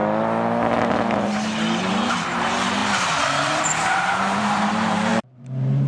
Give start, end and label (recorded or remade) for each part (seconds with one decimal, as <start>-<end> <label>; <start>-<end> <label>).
0.0-1.8 recorded; 1.8-5.9 remade